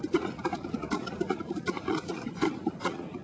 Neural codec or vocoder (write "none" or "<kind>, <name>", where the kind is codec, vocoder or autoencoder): vocoder, Vocos